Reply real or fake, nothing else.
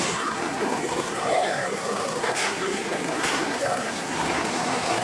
fake